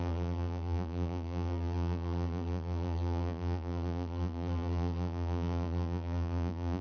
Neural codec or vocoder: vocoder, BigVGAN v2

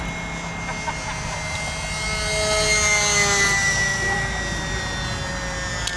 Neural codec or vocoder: none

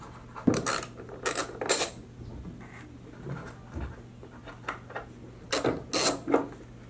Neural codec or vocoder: none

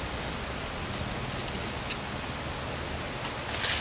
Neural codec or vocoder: none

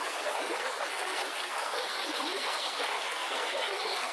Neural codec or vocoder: codec, SNAC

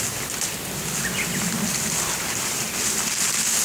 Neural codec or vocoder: none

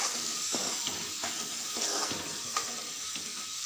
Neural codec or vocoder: codec, SNAC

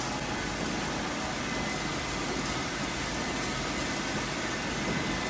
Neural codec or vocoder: none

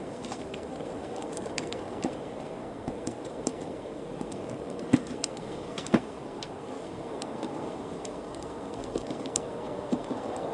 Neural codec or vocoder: codec, SNAC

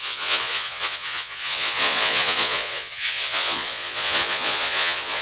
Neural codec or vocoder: vocoder, Vocos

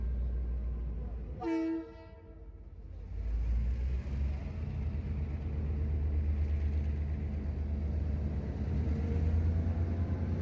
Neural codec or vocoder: none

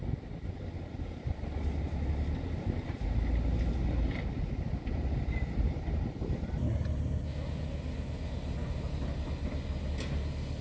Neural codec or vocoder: none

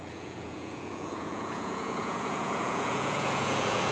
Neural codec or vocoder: vocoder, Vocos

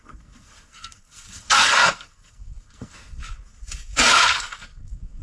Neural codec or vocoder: codec, SNAC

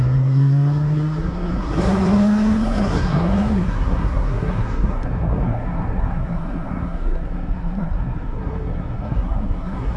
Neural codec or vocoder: codec, SNAC